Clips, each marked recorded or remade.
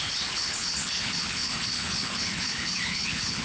remade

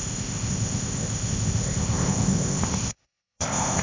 remade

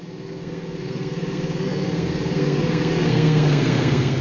remade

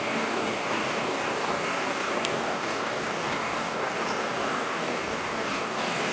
remade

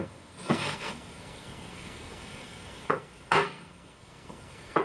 remade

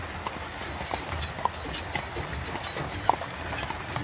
recorded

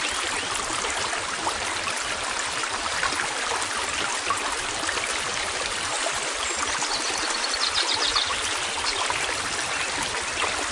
recorded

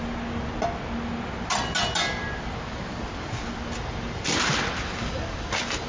recorded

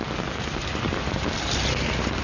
recorded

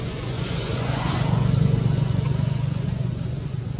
remade